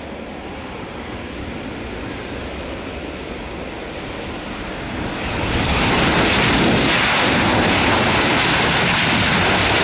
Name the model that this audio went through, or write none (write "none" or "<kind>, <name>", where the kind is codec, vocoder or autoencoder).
none